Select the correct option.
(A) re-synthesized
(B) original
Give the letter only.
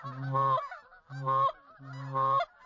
B